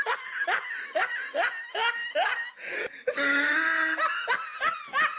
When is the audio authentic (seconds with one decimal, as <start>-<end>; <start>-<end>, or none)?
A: 0.0-5.2